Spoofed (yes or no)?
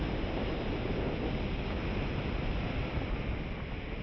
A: no